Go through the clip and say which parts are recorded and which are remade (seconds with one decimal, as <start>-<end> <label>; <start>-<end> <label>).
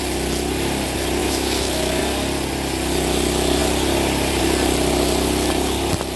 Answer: 0.0-1.2 recorded; 1.2-2.0 remade; 2.0-6.2 recorded